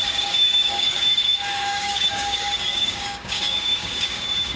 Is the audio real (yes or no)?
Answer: no